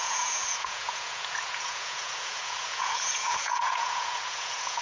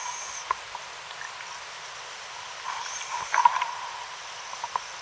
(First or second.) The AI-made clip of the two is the first